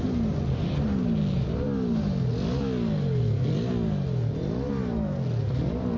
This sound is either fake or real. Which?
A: real